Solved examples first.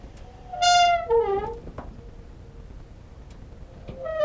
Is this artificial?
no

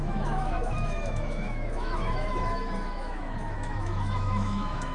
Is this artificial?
yes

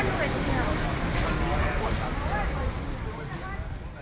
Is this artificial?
no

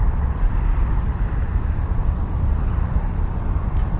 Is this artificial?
no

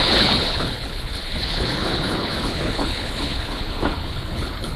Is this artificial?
yes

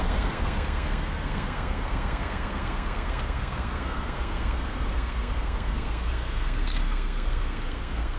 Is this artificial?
yes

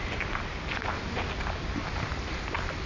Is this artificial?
no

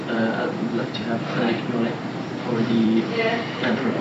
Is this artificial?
yes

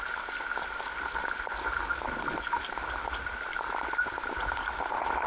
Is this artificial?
no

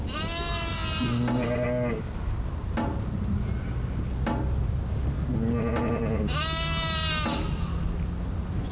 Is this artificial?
no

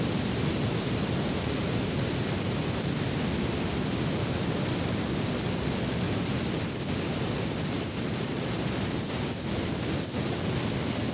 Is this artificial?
no